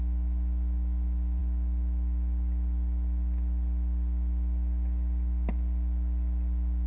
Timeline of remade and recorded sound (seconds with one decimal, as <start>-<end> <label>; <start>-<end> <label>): 0.0-6.9 recorded